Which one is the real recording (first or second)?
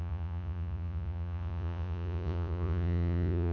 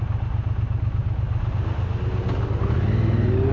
second